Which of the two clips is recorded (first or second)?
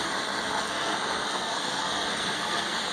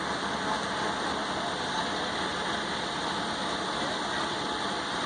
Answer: second